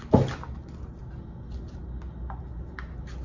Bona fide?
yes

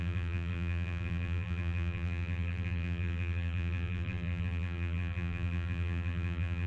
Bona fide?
no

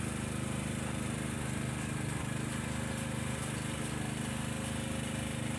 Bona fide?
yes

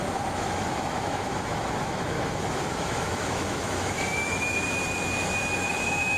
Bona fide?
no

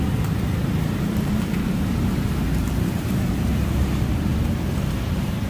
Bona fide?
no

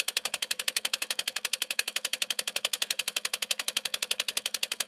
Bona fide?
no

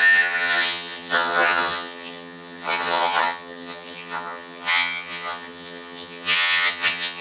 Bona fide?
no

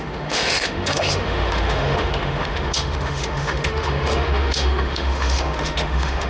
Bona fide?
no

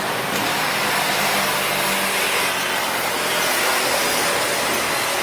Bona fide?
yes